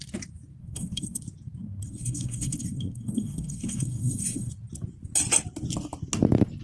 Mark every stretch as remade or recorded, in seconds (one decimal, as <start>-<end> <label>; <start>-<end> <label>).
0.0-0.6 recorded; 0.6-1.2 remade; 1.2-1.6 recorded; 1.6-4.5 remade; 4.5-6.6 recorded